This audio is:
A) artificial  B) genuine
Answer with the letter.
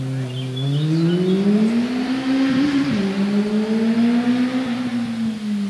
B